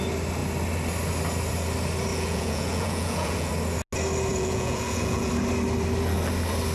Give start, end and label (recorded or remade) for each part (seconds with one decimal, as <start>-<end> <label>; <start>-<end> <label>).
0.0-2.1 recorded; 2.1-3.5 remade; 3.5-4.3 recorded; 4.3-5.3 remade; 5.3-6.7 recorded